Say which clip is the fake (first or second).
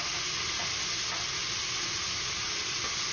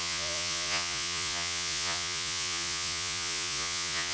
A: second